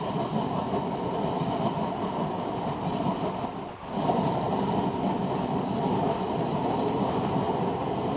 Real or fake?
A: real